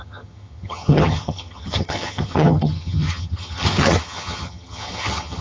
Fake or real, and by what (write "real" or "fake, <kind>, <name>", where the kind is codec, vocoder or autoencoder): fake, vocoder, HiFi-GAN